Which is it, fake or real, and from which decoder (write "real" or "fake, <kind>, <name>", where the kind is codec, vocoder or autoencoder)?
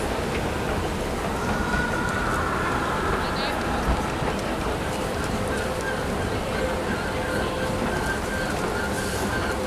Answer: real